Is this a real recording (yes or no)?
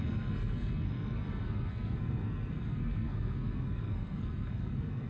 no